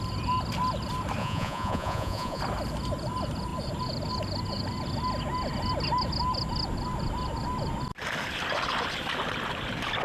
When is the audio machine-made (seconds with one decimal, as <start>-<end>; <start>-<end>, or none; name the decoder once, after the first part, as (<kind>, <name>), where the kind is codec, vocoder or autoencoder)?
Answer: 1.2-2.4 (vocoder, Vocos)